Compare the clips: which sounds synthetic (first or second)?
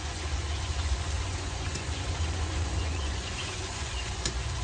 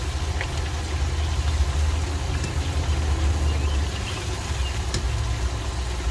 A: first